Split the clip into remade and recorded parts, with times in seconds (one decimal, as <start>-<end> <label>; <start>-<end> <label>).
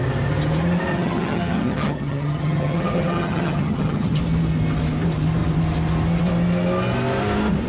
0.0-0.9 recorded; 0.9-4.2 remade; 4.2-7.7 recorded